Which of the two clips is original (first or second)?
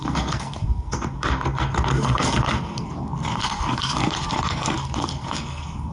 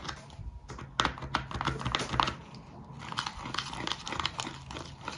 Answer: second